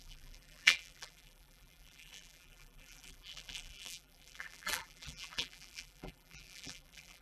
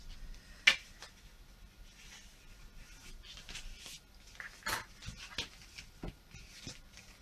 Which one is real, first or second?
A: second